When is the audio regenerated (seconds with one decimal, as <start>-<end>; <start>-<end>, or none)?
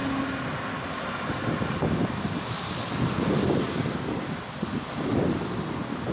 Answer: none